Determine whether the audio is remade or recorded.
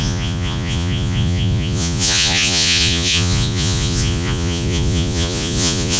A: remade